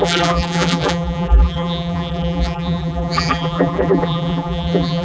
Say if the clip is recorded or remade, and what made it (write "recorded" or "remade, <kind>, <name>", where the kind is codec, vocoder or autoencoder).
remade, vocoder, BigVGAN v2